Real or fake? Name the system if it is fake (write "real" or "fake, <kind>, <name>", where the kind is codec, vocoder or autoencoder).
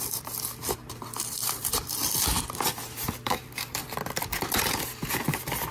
fake, vocoder, BigVGAN v2